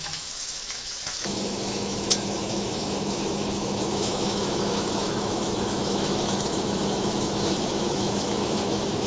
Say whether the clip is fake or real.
fake